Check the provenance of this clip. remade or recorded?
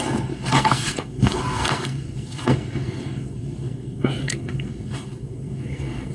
remade